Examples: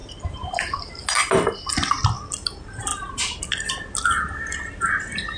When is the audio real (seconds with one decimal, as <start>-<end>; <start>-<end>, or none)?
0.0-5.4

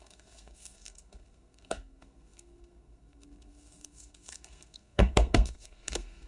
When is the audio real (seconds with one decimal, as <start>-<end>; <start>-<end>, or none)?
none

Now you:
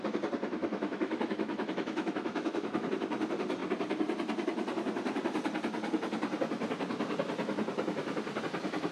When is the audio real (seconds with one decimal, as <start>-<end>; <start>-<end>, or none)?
0.0-0.6; 2.9-8.9